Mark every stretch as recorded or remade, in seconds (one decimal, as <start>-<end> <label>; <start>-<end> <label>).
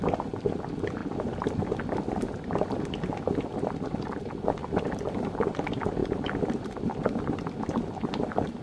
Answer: 0.0-6.0 recorded; 6.0-6.9 remade; 6.9-8.6 recorded